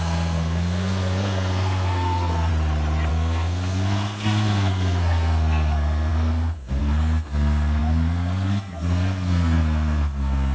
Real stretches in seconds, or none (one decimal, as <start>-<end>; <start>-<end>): 2.5-3.1